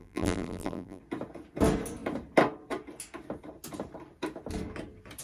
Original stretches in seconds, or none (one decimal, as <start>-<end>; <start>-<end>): 1.0-5.2